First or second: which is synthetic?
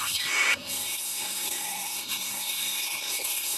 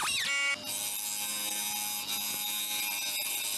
first